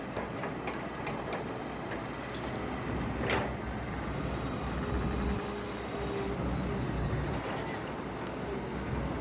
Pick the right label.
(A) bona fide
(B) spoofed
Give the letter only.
A